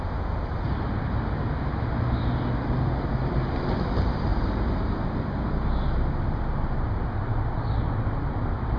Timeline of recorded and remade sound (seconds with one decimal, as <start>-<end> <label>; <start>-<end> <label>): 0.0-4.3 recorded; 4.3-4.9 remade; 4.9-8.8 recorded